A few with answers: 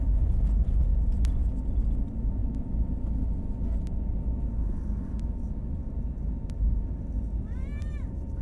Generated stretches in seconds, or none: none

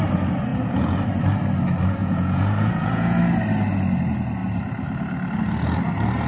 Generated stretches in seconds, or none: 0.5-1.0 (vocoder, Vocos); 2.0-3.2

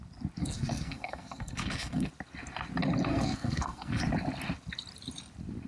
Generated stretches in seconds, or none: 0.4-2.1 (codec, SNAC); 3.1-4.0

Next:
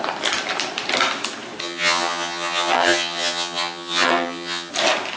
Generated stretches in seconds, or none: 1.6-4.7 (vocoder, HiFi-GAN)